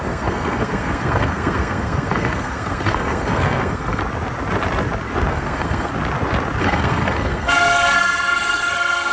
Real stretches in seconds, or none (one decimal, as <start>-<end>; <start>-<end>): 4.0-5.3; 5.9-6.6